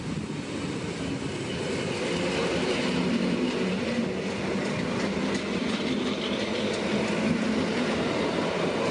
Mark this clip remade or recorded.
recorded